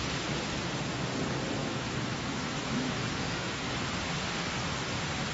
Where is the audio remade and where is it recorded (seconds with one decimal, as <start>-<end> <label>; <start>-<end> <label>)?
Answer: 0.0-1.6 recorded; 1.6-3.8 remade; 3.8-5.3 recorded